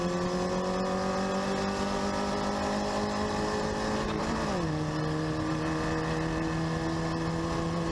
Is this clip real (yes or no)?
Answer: yes